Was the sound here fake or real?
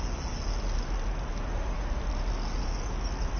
real